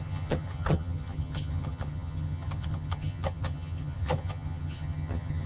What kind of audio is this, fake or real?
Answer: fake